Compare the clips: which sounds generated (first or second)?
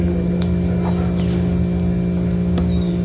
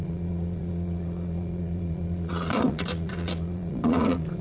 second